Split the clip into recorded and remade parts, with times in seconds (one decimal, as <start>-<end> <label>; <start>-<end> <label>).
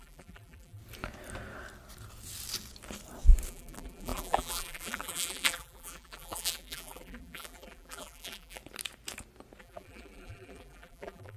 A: 0.0-0.8 remade; 0.8-3.5 recorded; 3.5-8.6 remade; 8.6-9.6 recorded; 9.6-11.4 remade